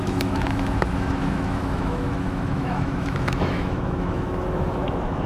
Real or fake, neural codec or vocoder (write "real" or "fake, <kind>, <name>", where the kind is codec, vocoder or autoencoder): fake, autoencoder, DAC-VAE